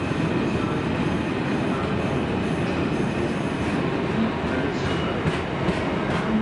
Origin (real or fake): real